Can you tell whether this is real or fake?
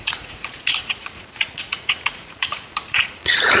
fake